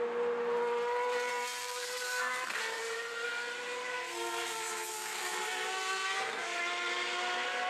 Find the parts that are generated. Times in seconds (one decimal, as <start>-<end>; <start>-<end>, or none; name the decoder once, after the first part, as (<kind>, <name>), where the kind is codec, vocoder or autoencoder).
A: 1.3-2.6 (codec, SNAC); 3.9-6.6